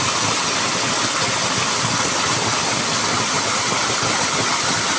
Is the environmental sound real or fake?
real